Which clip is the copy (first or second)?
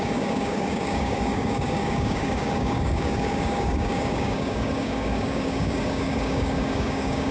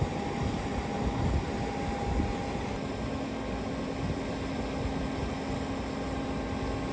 first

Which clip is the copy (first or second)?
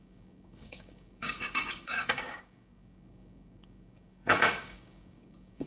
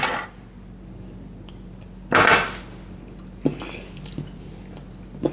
first